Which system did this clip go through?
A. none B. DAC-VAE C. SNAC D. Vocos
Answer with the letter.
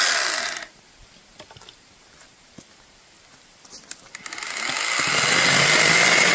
A